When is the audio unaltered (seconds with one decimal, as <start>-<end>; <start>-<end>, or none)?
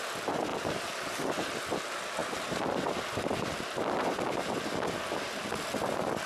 0.0-6.3